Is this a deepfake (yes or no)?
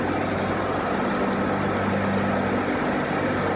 no